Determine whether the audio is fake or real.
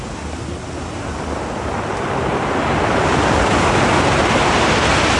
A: real